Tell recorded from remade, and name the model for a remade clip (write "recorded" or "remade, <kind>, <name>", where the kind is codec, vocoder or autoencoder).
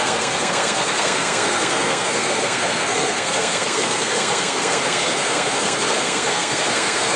remade, codec, SNAC